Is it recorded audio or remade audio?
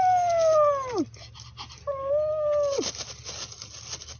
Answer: recorded